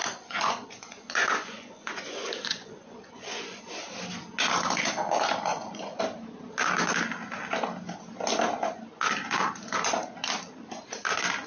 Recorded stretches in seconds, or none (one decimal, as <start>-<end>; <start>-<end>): 3.6-5.5; 6.0-11.5